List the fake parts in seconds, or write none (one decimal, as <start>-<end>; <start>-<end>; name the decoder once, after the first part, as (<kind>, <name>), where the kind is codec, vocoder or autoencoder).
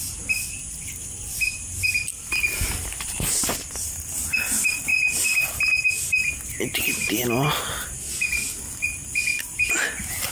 none